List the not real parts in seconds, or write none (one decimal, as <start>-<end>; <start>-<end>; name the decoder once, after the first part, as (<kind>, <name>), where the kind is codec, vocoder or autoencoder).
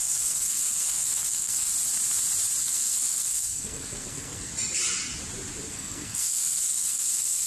0.0-1.7 (codec, SNAC); 2.6-4.5; 5.7-7.5